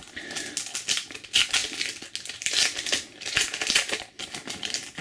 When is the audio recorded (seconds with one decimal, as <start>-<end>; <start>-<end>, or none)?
0.0-5.0